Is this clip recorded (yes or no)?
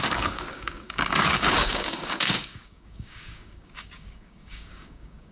no